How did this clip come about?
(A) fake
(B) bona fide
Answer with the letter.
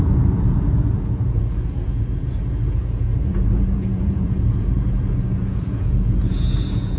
A